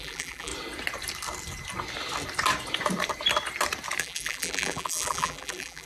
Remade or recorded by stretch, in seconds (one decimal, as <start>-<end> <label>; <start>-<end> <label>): 0.0-0.5 remade; 0.5-4.0 recorded; 4.0-5.9 remade

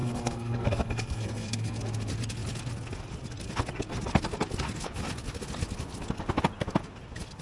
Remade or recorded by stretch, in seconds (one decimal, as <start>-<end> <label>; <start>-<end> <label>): 0.0-1.8 remade; 1.8-7.4 recorded

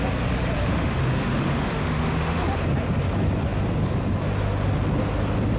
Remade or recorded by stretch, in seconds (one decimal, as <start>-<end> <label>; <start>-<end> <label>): 0.0-0.7 recorded; 0.7-2.4 remade; 2.4-5.6 recorded

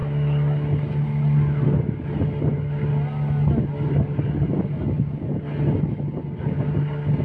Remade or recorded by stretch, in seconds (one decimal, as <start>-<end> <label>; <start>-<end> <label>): 0.0-7.2 recorded

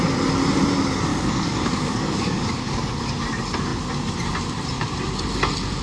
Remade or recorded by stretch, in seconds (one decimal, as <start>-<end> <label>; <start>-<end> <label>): 0.0-1.1 recorded; 1.1-3.1 remade; 3.1-5.8 recorded

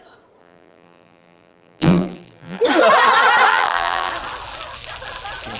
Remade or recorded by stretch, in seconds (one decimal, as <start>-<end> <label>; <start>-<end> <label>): 0.0-0.4 recorded; 0.4-2.6 remade; 2.6-3.5 recorded; 3.5-4.1 remade; 4.1-5.6 recorded

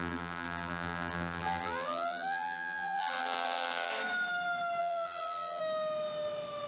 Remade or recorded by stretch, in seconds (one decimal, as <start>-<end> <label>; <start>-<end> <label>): 0.0-3.9 remade; 3.9-4.8 recorded; 4.8-5.6 remade; 5.6-6.7 recorded

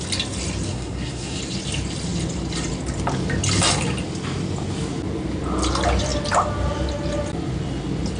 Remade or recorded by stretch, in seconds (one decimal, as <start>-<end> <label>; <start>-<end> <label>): 0.0-0.7 recorded; 0.7-1.4 remade; 1.4-8.2 recorded